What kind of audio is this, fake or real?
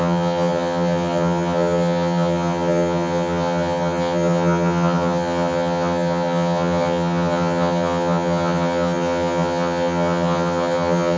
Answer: fake